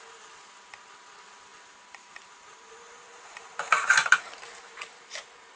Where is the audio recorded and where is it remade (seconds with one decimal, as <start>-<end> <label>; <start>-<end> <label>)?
0.0-1.5 recorded; 1.5-4.9 remade; 4.9-5.6 recorded

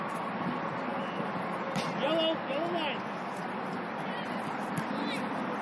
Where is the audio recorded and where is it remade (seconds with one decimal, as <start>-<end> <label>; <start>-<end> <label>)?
0.0-5.6 recorded